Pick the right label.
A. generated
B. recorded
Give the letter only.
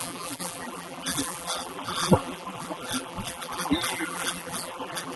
A